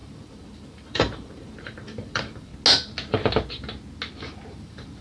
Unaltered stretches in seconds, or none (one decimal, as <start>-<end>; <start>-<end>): 2.5-4.5